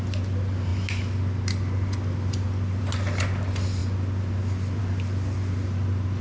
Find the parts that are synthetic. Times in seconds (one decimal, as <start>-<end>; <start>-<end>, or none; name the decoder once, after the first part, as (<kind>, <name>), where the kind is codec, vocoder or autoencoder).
none